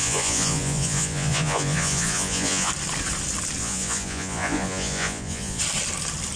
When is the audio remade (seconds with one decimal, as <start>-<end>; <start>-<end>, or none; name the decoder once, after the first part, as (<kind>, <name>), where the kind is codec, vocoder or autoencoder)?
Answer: 0.0-2.7 (vocoder, Vocos); 3.6-5.6